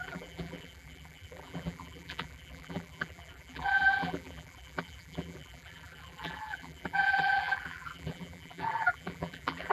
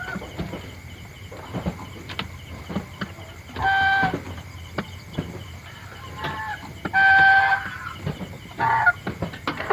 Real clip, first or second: second